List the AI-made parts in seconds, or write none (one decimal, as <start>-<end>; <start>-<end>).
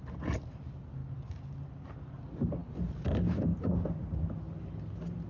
none